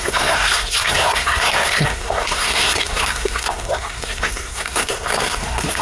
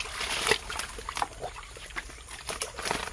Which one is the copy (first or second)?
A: first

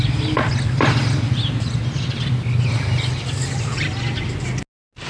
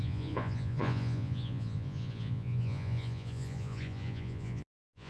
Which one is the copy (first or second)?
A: second